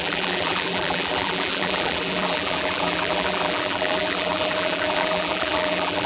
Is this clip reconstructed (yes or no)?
yes